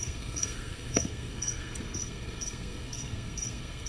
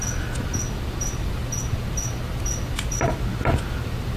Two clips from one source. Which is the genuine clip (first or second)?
second